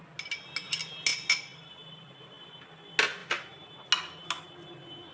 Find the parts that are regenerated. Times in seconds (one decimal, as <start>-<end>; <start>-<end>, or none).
3.2-3.7